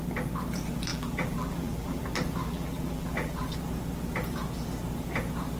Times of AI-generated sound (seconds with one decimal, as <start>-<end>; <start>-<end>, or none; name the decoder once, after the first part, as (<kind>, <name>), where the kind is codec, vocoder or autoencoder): 0.9-2.0 (vocoder, BigVGAN v2); 2.4-3.5